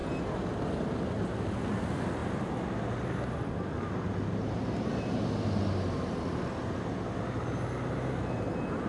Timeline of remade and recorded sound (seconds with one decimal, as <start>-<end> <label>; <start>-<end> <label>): 0.0-8.9 recorded